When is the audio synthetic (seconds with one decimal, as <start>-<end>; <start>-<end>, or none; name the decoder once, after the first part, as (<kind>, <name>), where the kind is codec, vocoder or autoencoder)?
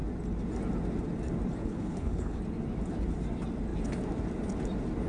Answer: 1.6-2.4 (codec, HILCodec)